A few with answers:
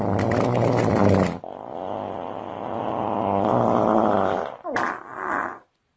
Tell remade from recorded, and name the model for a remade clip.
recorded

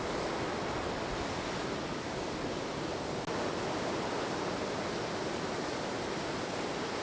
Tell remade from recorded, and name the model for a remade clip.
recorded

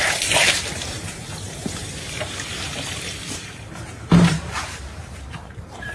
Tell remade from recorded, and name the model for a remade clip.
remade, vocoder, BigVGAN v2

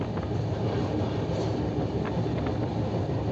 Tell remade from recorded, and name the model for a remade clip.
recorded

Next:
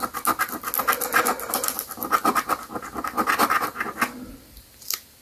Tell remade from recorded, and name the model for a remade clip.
recorded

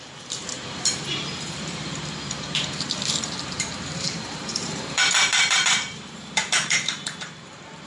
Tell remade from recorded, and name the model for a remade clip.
remade, vocoder, BigVGAN v2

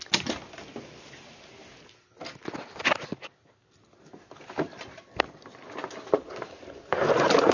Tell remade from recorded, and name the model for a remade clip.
recorded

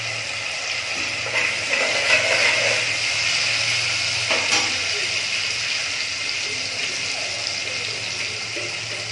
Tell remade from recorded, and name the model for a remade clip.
recorded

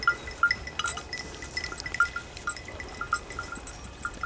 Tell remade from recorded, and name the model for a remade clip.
recorded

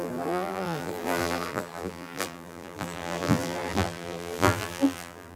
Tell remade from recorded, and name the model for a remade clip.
remade, vocoder, BigVGAN v2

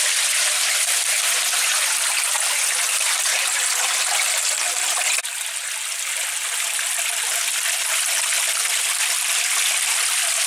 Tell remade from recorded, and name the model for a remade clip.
recorded